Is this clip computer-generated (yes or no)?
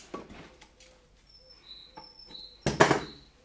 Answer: no